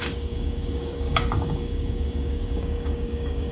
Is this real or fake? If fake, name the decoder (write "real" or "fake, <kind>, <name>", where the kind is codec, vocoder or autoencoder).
fake, codec, DAC